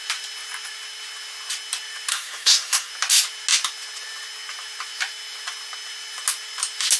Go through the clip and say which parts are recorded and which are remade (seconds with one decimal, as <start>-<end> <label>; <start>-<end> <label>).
0.0-2.1 recorded; 2.1-2.9 remade; 2.9-7.0 recorded